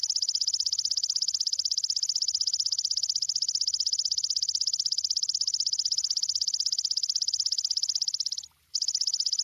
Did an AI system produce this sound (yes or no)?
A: no